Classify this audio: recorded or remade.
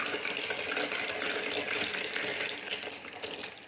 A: recorded